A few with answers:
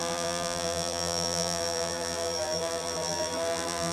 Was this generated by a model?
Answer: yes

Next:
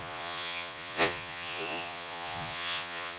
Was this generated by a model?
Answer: yes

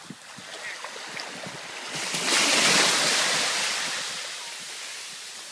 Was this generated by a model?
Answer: no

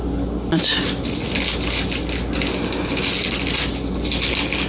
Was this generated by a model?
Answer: no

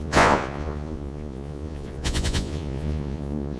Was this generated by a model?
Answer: yes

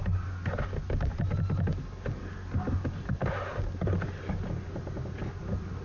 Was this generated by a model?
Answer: no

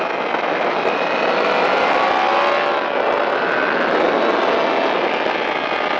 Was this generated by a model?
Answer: no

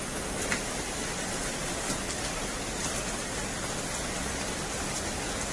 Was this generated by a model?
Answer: no